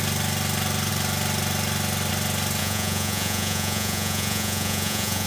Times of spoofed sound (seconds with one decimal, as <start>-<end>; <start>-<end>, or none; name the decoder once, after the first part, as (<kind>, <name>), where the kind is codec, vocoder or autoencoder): 2.6-5.3 (vocoder, Vocos)